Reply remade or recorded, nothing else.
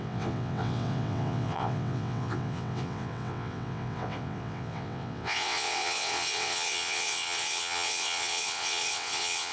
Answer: remade